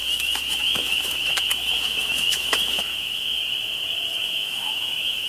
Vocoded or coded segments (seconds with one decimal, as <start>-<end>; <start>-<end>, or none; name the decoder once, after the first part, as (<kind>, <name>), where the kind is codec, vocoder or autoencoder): 0.0-3.4 (autoencoder, DAC-VAE); 4.2-5.3